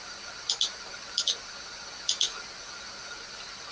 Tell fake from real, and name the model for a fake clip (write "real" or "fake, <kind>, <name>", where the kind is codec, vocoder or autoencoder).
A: real